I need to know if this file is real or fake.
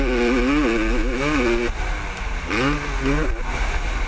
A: real